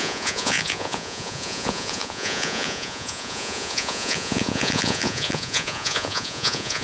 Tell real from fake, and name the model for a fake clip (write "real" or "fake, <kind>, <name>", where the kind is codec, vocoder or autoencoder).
fake, vocoder, Vocos